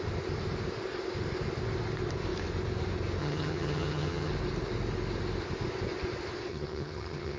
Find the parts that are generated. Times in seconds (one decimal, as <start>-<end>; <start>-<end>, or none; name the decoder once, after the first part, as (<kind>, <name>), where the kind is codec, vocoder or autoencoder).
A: 3.2-4.3 (vocoder, HiFi-GAN); 6.5-7.4